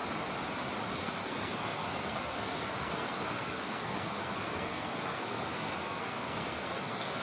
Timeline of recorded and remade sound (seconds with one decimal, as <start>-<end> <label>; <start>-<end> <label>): 0.0-0.9 recorded; 0.9-7.2 remade